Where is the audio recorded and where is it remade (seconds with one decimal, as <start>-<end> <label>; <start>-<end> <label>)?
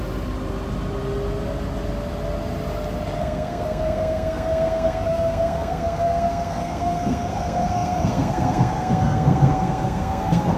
0.0-3.2 recorded; 3.2-10.6 remade